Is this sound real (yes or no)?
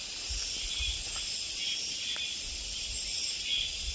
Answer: yes